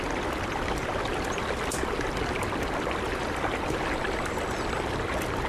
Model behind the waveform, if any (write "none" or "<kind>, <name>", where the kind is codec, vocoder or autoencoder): none